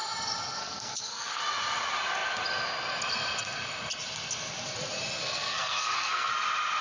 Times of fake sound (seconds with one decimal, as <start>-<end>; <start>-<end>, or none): 0.6-1.4; 5.2-6.3